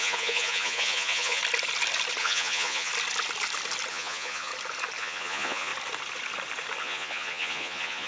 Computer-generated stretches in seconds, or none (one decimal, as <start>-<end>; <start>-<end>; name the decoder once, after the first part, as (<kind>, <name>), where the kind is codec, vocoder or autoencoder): 0.0-1.4 (vocoder, Vocos); 2.2-2.9; 3.9-4.5; 5.0-5.7; 6.8-8.1